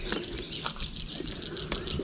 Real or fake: real